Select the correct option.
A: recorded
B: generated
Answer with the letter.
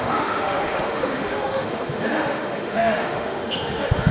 B